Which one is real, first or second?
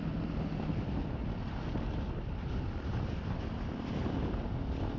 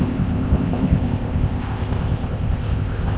first